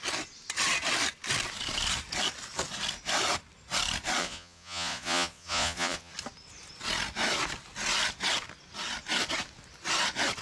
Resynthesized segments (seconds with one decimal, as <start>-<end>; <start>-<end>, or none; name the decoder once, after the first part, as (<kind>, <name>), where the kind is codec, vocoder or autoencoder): 4.2-6.1 (vocoder, Vocos)